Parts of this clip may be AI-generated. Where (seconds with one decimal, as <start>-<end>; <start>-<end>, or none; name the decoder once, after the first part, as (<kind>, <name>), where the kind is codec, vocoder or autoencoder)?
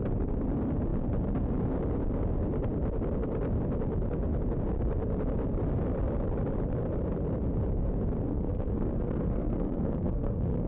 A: 8.3-10.7 (codec, SNAC)